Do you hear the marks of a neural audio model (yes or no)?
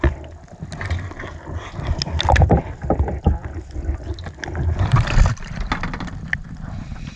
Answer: no